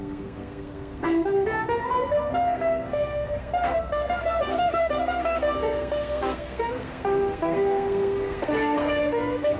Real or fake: fake